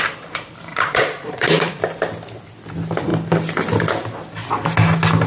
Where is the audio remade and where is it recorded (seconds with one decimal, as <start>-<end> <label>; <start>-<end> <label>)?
0.0-0.7 recorded; 0.7-1.8 remade; 1.8-5.3 recorded